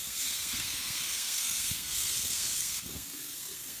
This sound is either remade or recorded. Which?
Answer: remade